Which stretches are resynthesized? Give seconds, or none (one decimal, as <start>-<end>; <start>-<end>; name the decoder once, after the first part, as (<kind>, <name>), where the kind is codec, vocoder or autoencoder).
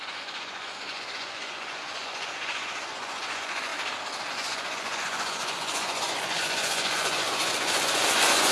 0.0-3.7 (vocoder, Vocos); 4.3-8.5